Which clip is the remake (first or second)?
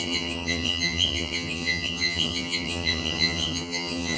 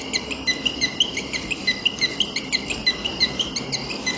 first